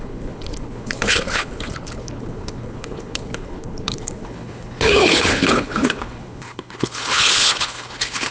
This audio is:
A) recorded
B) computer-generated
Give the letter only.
B